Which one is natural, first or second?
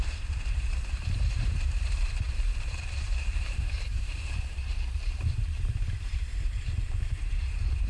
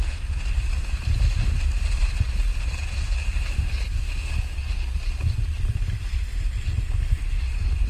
second